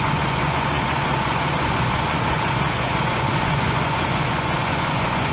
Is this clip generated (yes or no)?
yes